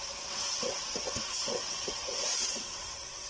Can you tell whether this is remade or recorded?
remade